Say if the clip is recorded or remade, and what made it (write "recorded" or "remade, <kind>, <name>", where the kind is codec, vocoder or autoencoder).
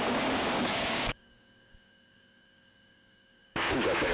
remade, codec, DAC